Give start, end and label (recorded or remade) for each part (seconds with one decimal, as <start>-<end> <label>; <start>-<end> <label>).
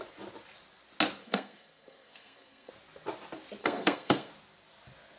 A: 0.0-1.2 recorded; 1.2-2.7 remade; 2.7-3.6 recorded; 3.6-4.3 remade; 4.3-5.2 recorded